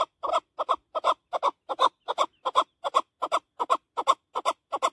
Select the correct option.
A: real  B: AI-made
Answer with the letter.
A